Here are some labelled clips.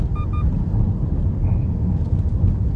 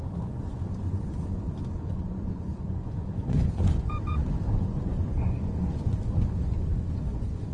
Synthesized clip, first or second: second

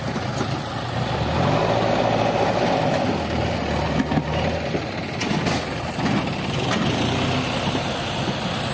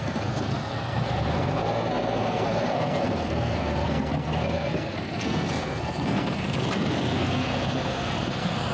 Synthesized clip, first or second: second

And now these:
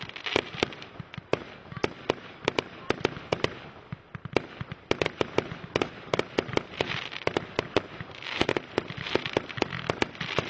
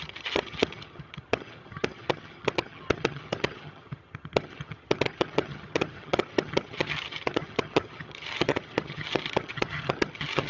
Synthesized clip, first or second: second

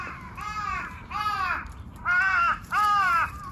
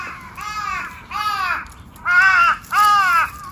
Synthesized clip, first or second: first